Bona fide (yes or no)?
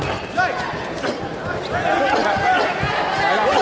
yes